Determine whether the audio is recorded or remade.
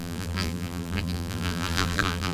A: remade